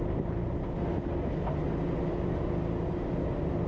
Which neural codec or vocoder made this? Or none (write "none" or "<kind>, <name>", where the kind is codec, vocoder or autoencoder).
none